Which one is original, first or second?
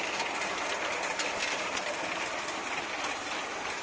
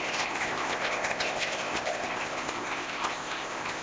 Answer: first